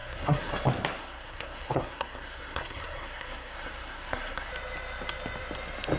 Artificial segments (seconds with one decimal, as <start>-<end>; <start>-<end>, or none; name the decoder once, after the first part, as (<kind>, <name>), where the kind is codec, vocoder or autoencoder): 0.0-0.5 (codec, SNAC); 1.0-4.5